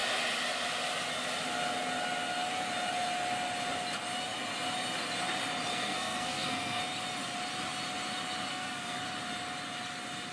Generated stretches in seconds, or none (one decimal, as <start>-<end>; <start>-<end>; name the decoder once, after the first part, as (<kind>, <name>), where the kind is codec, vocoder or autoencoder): 5.7-6.8 (codec, SNAC); 8.5-9.0